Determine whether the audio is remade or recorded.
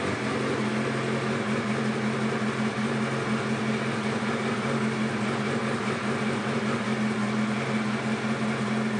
recorded